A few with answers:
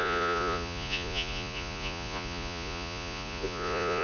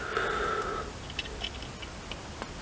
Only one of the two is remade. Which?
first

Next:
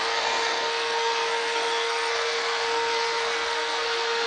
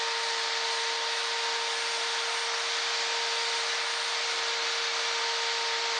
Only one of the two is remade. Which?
first